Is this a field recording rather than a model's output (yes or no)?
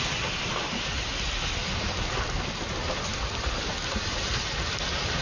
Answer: yes